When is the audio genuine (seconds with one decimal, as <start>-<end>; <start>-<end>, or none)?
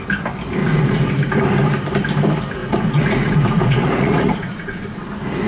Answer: 0.0-0.6; 1.1-2.6; 5.1-5.5